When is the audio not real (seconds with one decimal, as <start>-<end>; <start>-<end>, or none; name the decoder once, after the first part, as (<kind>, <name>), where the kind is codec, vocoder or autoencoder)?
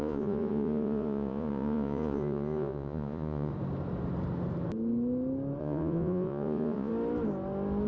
0.0-3.5 (vocoder, Vocos); 5.6-6.9